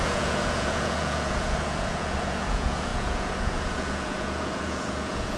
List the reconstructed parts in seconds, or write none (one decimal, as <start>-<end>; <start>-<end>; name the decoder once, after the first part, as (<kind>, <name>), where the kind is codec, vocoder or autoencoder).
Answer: 0.0-5.4 (vocoder, Vocos)